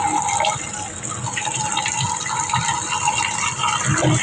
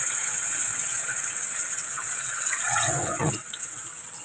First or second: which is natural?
first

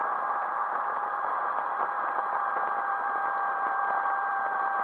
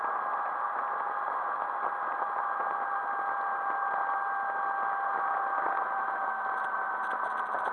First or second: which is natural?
second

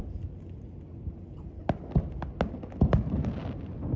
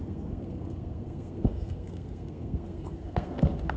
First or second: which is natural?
first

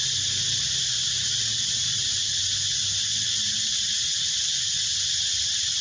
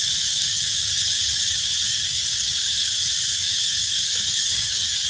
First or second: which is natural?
first